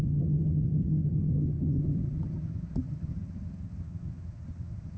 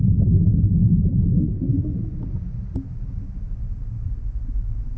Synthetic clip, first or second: first